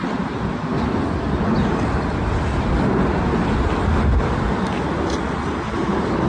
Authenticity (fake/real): real